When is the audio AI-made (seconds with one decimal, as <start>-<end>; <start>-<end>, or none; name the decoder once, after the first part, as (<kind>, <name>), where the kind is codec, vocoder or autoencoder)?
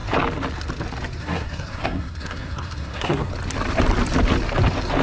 1.2-3.3 (codec, SNAC)